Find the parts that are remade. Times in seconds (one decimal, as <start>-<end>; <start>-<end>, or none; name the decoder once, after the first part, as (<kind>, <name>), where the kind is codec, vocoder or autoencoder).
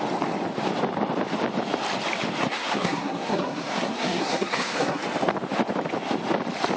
2.4-5.0 (codec, SNAC)